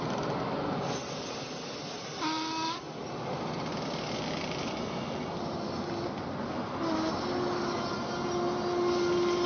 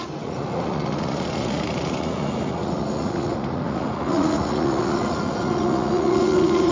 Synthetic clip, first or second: second